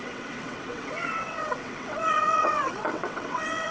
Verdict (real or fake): fake